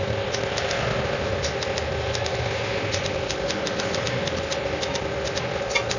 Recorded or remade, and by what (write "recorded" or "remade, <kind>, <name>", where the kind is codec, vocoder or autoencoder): recorded